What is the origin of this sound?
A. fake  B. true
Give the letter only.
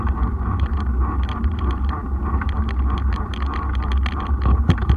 B